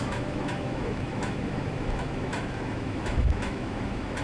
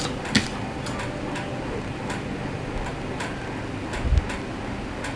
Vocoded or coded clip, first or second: first